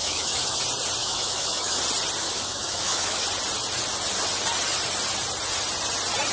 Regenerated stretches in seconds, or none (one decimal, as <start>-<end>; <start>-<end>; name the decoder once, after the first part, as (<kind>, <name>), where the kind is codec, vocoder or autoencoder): 0.0-0.6 (autoencoder, DAC-VAE); 1.0-1.8; 2.2-3.2